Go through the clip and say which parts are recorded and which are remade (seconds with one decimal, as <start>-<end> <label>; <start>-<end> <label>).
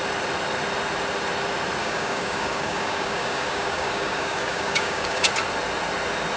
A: 0.0-1.8 recorded; 1.8-5.3 remade; 5.3-6.4 recorded